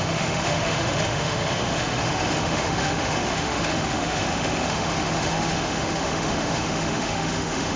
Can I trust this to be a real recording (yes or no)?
no